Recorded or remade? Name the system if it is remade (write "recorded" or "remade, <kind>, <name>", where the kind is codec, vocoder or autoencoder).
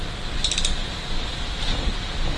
recorded